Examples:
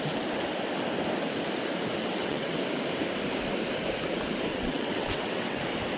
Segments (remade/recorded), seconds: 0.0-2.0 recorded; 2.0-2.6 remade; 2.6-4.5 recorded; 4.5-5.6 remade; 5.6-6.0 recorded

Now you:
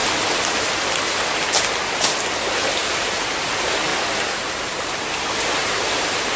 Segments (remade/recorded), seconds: 0.0-5.6 recorded; 5.6-6.4 remade